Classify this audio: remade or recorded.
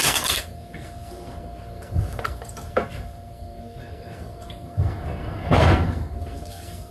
remade